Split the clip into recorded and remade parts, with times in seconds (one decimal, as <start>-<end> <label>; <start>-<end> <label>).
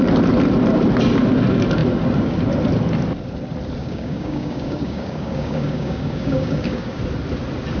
0.0-3.8 recorded; 3.8-7.0 remade; 7.0-7.8 recorded